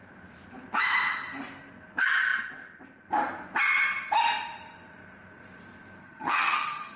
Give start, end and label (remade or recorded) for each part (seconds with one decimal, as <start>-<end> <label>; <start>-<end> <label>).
0.0-6.0 recorded; 6.0-7.0 remade